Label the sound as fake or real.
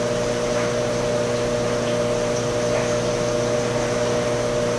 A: real